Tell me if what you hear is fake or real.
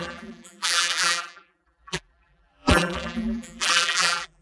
fake